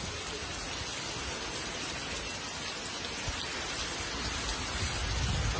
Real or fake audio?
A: real